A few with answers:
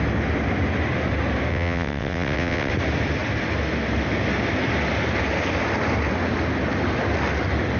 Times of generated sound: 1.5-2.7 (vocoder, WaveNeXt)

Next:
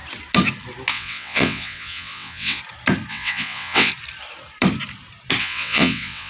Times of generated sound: 0.9-2.6 (vocoder, WaveNeXt); 3.1-3.9; 5.4-6.3

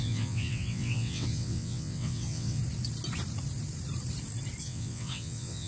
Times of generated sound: 0.0-2.6 (vocoder, WaveNeXt); 4.6-5.7

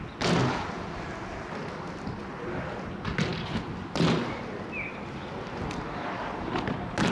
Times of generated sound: none

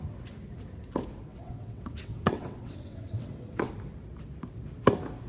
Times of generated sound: 1.3-3.7 (vocoder, WaveNeXt)

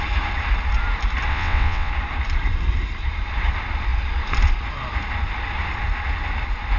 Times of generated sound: 1.3-1.9 (vocoder, WaveNeXt)